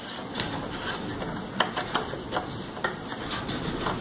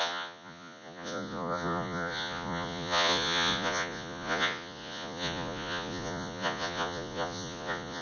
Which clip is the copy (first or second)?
second